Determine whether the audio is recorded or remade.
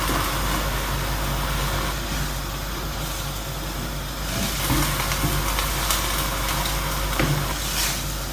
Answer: recorded